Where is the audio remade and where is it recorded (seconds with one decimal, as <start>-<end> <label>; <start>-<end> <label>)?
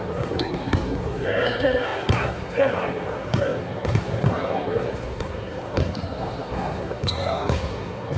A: 0.0-8.2 remade